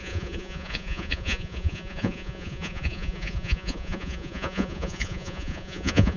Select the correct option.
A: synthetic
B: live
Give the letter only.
A